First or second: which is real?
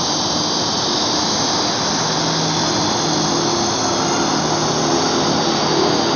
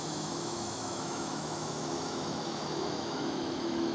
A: first